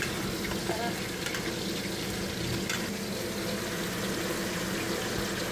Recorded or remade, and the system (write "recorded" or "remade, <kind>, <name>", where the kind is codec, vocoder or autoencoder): recorded